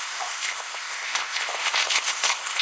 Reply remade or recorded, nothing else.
remade